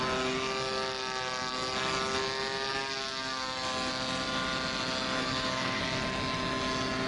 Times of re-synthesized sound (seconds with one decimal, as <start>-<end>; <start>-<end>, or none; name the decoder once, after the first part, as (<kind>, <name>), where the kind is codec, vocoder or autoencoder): 5.2-5.8 (codec, SNAC)